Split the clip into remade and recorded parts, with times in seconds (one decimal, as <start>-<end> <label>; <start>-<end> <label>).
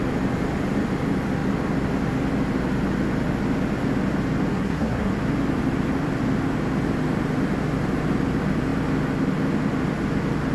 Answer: 0.0-4.5 recorded; 4.5-5.1 remade; 5.1-10.5 recorded